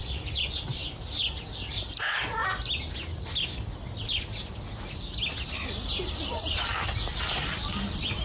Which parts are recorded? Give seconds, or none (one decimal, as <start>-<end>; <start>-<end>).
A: 0.8-1.7; 2.4-6.1